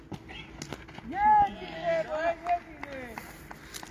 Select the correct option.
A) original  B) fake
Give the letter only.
A